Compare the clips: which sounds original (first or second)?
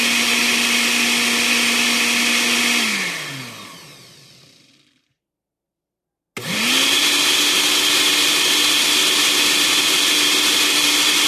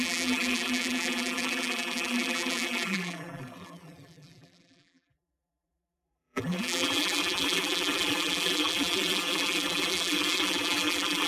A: first